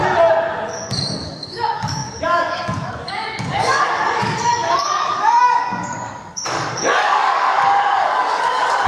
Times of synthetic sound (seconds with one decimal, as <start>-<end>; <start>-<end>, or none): 0.6-8.9